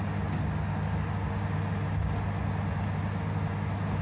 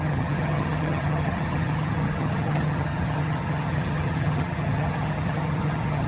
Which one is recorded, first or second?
first